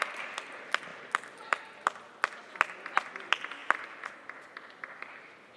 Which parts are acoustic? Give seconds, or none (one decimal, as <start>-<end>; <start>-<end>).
0.0-5.6